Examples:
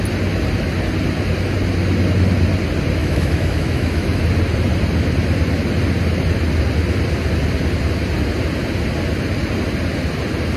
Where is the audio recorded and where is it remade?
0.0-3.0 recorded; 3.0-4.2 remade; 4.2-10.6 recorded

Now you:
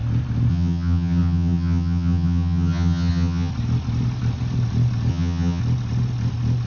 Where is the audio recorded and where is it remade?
0.0-0.5 recorded; 0.5-3.5 remade; 3.5-5.1 recorded; 5.1-5.6 remade; 5.6-6.7 recorded

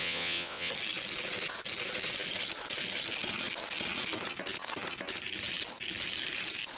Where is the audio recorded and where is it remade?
0.0-0.7 remade; 0.7-6.8 recorded

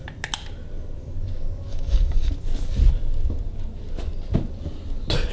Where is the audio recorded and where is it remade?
0.0-1.7 recorded; 1.7-2.3 remade; 2.3-5.3 recorded

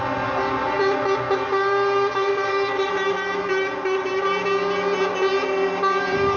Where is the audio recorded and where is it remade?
0.0-6.4 recorded

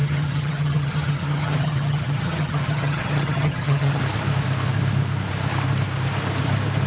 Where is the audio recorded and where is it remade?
0.0-4.0 remade; 4.0-6.9 recorded

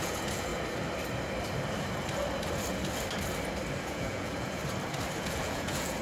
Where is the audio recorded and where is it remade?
0.0-0.5 remade; 0.5-3.8 recorded; 3.8-4.6 remade; 4.6-5.2 recorded; 5.2-6.0 remade

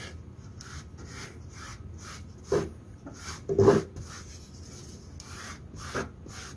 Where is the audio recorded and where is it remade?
0.0-6.6 recorded